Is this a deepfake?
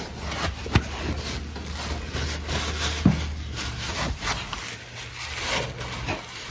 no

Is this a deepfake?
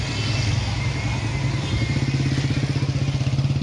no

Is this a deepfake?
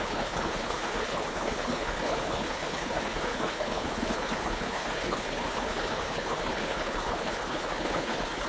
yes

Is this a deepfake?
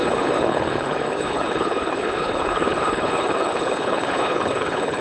yes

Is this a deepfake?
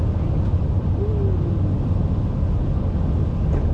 no